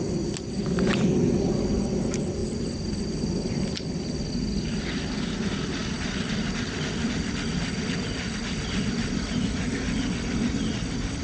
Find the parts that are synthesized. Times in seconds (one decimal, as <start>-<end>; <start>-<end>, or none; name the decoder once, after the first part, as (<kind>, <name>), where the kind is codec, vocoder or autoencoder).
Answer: none